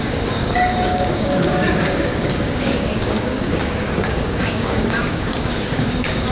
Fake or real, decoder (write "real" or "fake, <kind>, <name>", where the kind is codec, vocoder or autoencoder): fake, codec, DAC